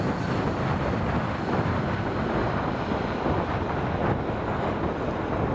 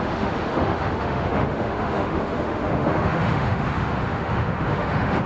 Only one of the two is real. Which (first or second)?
first